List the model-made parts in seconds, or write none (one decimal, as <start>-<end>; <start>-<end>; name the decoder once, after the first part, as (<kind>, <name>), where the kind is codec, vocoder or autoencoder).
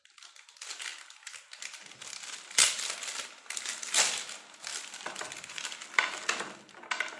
4.7-5.9 (vocoder, BigVGAN v2)